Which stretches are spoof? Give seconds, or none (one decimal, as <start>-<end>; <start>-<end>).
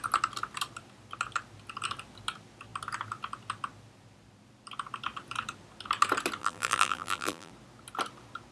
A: 6.4-7.5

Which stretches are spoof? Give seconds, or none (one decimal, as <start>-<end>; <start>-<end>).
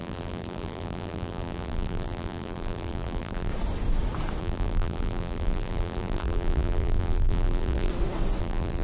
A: 0.0-3.5; 4.4-7.9; 8.4-8.8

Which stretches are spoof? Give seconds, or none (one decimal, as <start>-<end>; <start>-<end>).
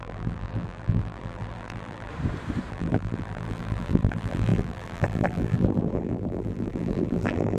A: 0.0-2.1; 2.7-7.6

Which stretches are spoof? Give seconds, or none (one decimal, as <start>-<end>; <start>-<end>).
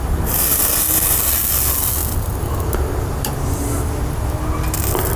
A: none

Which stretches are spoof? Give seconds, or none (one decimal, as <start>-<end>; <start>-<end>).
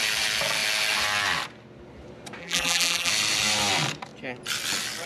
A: 2.4-3.1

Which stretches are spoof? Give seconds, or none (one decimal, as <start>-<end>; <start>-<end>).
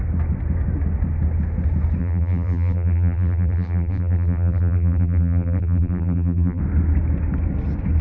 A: 2.0-6.6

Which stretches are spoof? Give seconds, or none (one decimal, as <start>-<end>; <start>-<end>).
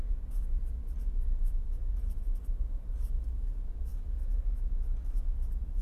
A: 1.8-2.9